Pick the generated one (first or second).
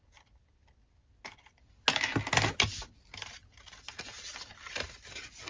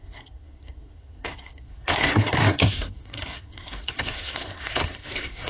second